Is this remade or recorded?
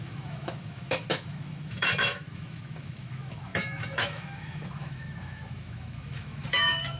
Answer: remade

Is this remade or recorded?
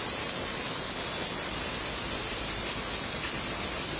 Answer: recorded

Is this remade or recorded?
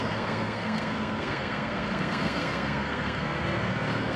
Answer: remade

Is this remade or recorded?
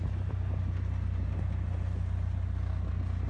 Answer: recorded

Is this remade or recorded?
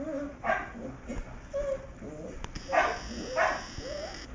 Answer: recorded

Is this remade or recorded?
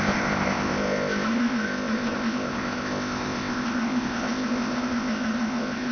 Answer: remade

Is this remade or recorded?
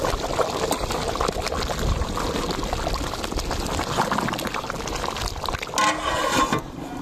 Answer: recorded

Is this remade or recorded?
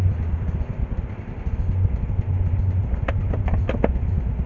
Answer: recorded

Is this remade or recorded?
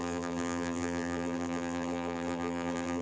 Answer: remade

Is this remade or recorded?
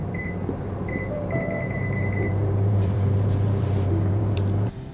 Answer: remade